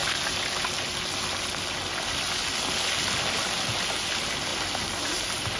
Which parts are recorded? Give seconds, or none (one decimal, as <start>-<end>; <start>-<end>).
0.0-5.6